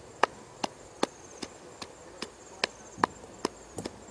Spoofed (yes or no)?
yes